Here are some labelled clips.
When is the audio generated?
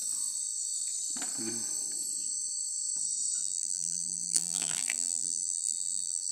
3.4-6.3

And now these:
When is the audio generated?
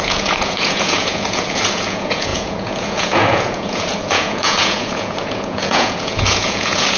0.0-7.0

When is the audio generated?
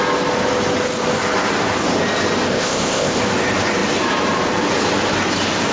2.5-3.2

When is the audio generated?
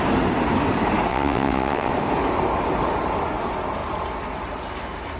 1.1-1.9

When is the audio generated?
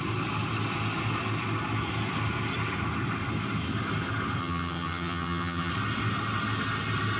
4.4-5.7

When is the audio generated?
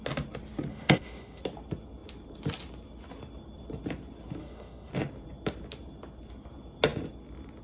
0.7-1.4; 4.4-4.9